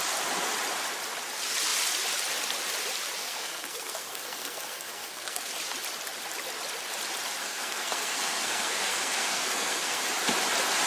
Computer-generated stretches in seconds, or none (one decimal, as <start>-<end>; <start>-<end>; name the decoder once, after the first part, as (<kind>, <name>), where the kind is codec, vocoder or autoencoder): 3.2-5.5 (codec, SNAC); 7.4-10.0